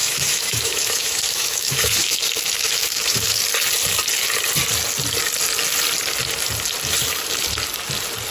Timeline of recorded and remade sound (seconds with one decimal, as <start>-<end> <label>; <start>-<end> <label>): 0.0-3.4 remade; 3.4-8.3 recorded